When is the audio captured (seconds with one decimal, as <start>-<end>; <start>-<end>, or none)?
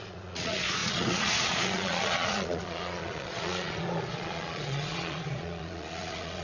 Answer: none